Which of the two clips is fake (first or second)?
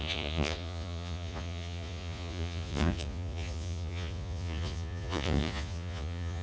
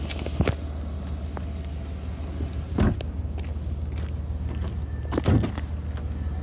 first